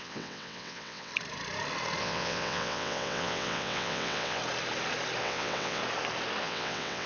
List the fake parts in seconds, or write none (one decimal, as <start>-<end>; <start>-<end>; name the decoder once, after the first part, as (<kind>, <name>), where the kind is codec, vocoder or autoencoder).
0.0-1.1 (vocoder, WaveNeXt); 2.0-4.4; 5.2-5.8; 6.4-7.1